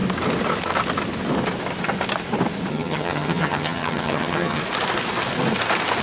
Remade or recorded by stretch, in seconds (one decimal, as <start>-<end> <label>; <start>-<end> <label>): 0.0-2.7 recorded; 2.7-4.6 remade; 4.6-6.0 recorded